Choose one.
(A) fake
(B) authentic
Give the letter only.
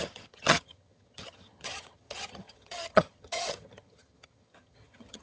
A